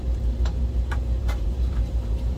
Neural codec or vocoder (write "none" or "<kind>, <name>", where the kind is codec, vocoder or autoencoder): vocoder, BigVGAN v2